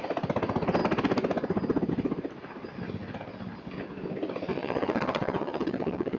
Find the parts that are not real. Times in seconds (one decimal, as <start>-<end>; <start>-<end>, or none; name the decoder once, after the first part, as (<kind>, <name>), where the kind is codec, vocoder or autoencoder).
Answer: 4.5-6.2 (vocoder, WaveNeXt)